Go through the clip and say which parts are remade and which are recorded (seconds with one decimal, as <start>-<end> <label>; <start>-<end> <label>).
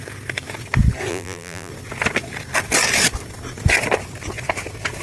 0.0-1.1 recorded; 1.1-1.7 remade; 1.7-5.0 recorded